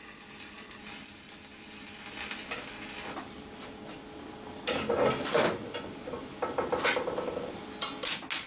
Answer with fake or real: real